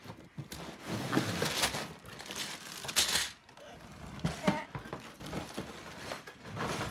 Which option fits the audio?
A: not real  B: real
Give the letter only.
B